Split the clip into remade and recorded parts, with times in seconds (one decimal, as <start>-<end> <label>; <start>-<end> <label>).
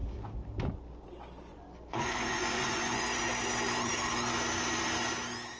0.0-1.5 recorded; 1.5-3.0 remade; 3.0-5.6 recorded